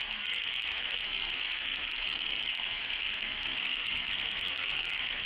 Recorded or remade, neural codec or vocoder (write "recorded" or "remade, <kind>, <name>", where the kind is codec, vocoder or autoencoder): remade, codec, SNAC